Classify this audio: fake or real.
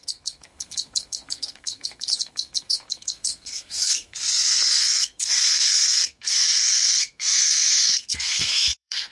fake